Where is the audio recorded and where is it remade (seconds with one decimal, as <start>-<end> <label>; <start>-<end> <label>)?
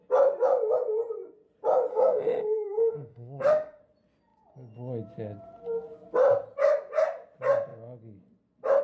0.0-1.9 recorded; 1.9-3.8 remade; 3.8-8.8 recorded